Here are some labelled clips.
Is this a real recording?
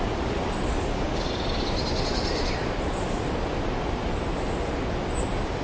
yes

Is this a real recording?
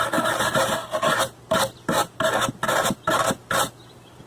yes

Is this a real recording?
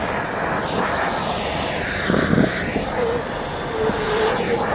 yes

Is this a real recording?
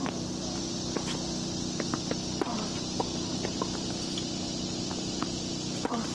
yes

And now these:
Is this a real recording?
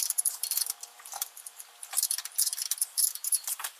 no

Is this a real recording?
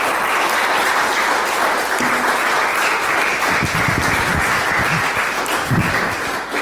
yes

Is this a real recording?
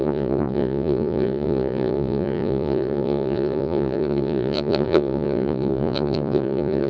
no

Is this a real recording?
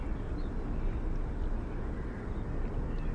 yes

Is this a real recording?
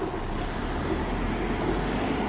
yes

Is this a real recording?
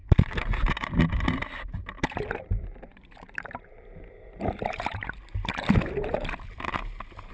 no